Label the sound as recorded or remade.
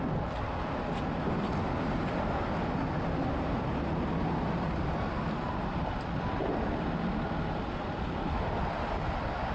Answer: recorded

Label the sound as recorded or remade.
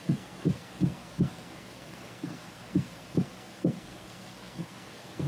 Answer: remade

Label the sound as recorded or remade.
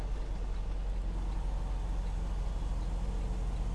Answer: recorded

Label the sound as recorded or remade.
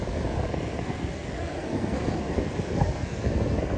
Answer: remade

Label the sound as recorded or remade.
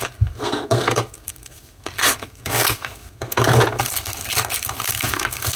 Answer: remade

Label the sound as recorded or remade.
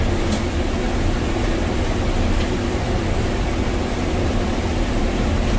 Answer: recorded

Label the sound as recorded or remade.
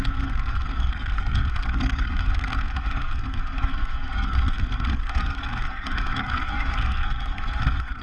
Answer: remade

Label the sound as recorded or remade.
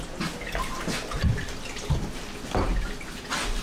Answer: recorded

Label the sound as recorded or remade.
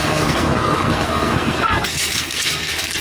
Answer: remade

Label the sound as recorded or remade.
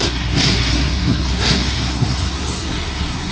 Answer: remade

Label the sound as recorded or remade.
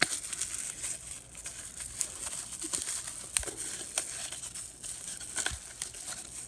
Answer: recorded